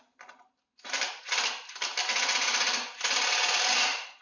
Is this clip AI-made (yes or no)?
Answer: no